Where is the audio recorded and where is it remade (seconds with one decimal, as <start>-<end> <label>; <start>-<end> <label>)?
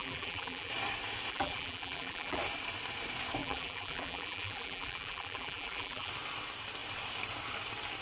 0.0-0.7 remade; 0.7-1.3 recorded; 1.3-2.4 remade; 2.4-3.4 recorded; 3.4-6.1 remade; 6.1-8.0 recorded